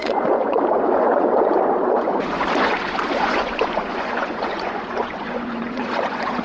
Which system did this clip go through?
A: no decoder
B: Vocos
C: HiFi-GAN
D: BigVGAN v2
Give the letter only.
B